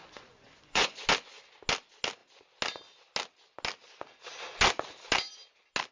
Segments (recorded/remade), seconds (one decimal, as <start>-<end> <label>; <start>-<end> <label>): 0.0-1.0 remade; 1.0-5.9 recorded